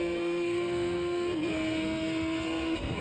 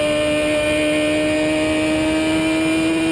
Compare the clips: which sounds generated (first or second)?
first